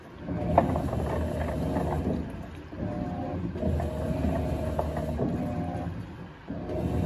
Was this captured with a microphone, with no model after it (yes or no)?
yes